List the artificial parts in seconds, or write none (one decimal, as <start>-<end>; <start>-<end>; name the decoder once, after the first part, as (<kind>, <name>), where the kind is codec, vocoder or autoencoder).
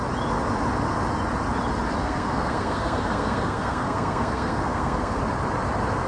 2.0-5.2 (codec, SNAC)